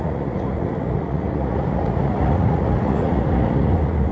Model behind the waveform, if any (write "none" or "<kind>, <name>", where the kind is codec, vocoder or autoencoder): vocoder, Vocos